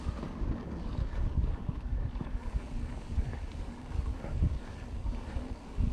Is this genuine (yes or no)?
no